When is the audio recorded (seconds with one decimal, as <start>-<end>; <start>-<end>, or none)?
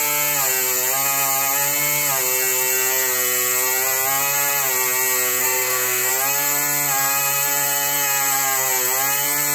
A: 0.0-5.4; 6.1-9.5